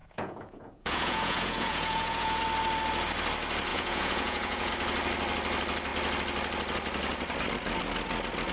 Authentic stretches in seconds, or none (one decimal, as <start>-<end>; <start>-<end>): 2.4-3.7; 4.7-8.5